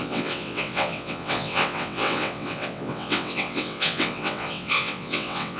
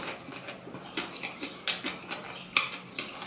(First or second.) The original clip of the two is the second